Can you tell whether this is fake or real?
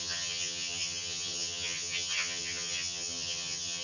fake